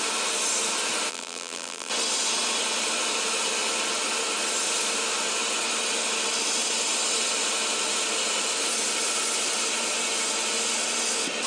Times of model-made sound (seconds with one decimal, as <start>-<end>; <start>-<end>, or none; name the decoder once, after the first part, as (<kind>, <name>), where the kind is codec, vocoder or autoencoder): 1.1-1.9 (vocoder, BigVGAN v2)

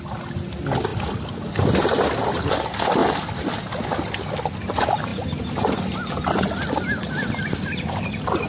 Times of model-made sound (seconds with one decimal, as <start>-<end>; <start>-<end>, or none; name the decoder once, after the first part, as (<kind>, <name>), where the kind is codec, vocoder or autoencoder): none

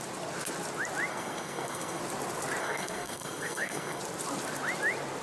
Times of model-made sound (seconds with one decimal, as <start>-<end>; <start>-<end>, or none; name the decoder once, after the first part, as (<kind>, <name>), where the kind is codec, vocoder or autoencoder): 1.1-2.0 (codec, SNAC); 2.6-4.0

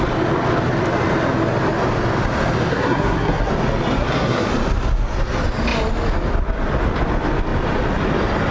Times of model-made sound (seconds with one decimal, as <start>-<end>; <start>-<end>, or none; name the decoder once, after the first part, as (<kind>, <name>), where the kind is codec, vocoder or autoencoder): 2.7-3.5 (codec, SNAC); 4.0-4.5

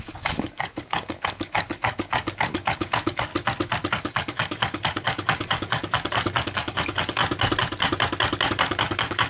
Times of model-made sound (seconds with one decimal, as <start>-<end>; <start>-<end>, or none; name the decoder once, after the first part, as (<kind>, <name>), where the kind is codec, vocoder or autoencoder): 0.0-3.3 (codec, DAC); 3.9-7.2; 8.5-9.3

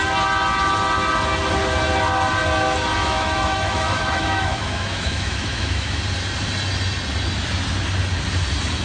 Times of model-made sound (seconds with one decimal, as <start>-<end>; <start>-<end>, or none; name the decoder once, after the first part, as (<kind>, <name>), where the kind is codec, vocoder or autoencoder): 3.0-6.0 (autoencoder, DAC-VAE)

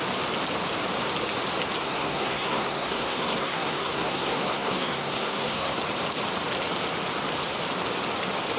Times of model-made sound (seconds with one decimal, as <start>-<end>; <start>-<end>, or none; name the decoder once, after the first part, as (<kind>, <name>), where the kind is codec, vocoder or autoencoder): 1.8-5.8 (codec, SNAC)